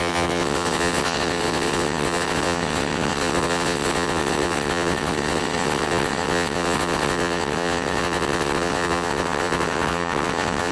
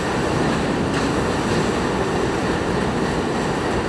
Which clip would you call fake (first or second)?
first